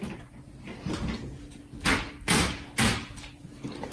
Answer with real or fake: real